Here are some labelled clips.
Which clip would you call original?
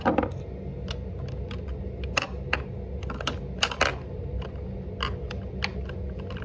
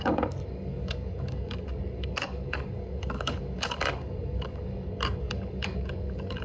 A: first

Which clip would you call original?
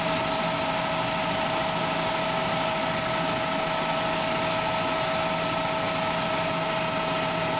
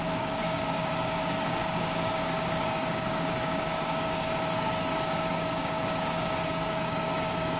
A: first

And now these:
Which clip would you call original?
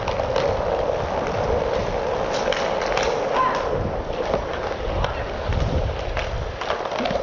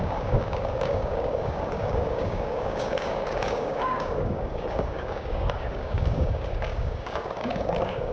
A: first